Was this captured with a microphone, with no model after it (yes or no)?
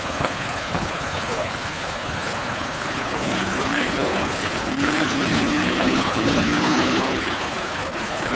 no